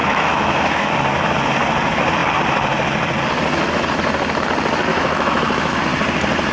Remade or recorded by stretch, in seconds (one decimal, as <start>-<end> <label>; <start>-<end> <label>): 0.0-0.9 remade; 0.9-4.9 recorded; 4.9-5.8 remade; 5.8-6.5 recorded

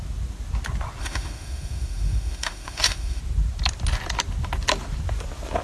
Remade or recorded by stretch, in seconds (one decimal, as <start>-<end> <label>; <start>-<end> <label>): 0.0-1.0 recorded; 1.0-3.2 remade; 3.2-5.6 recorded

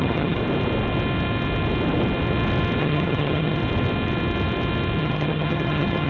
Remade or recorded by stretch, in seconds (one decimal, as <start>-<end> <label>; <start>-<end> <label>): 0.0-0.4 remade; 0.4-2.8 recorded; 2.8-3.6 remade; 3.6-5.0 recorded; 5.0-6.1 remade

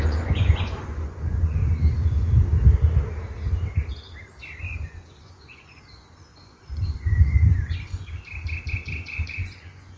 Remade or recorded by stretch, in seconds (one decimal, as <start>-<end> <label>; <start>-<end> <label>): 0.0-1.6 remade; 1.6-4.6 recorded; 4.6-8.1 remade; 8.1-8.7 recorded; 8.7-10.0 remade